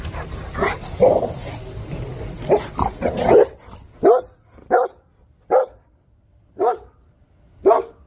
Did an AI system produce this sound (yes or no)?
no